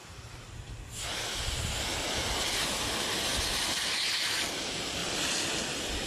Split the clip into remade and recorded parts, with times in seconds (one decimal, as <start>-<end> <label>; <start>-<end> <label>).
0.0-3.3 recorded; 3.3-4.1 remade; 4.1-5.0 recorded; 5.0-5.6 remade; 5.6-6.1 recorded